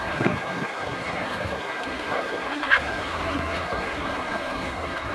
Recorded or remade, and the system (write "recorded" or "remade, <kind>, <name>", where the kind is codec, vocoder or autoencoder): remade, codec, SNAC